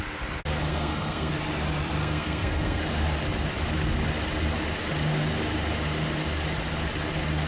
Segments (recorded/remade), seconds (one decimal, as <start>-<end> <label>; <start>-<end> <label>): 0.0-0.7 recorded; 0.7-1.3 remade; 1.3-2.0 recorded; 2.0-2.8 remade; 2.8-7.5 recorded